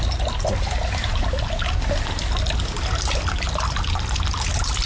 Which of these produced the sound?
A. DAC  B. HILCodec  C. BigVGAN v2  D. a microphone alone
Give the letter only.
D